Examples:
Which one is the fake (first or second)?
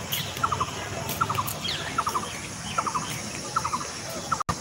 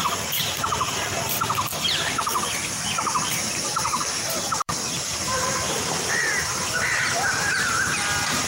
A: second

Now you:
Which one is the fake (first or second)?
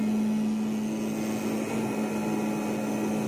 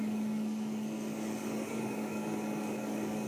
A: second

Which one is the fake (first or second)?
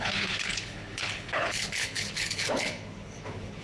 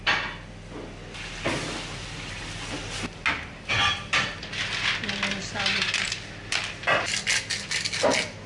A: first